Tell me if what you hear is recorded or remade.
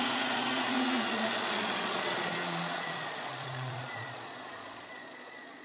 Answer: remade